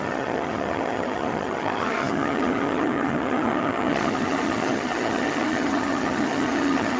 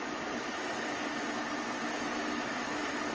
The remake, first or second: first